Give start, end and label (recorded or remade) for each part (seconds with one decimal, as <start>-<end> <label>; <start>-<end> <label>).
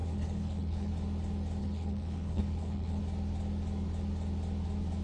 0.0-0.9 remade; 0.9-1.6 recorded; 1.6-3.0 remade; 3.0-5.0 recorded